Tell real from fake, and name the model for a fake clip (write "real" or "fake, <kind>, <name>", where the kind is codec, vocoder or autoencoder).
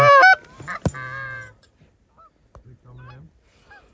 real